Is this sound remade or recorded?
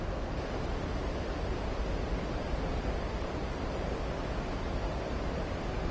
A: remade